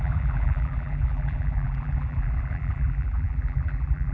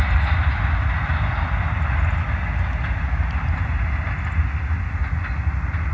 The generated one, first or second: first